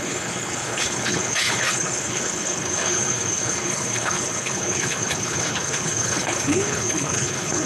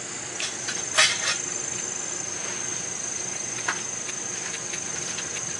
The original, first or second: second